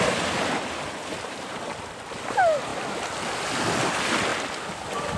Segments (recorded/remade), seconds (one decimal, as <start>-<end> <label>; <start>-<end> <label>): 0.0-5.2 recorded